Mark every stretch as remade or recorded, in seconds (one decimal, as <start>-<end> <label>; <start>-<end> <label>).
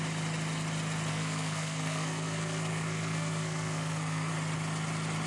0.0-1.1 recorded; 1.1-4.3 remade; 4.3-5.3 recorded